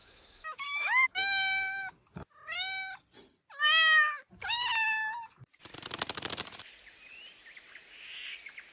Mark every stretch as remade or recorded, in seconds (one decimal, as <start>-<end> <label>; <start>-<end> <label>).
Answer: 0.0-1.9 remade; 1.9-8.7 recorded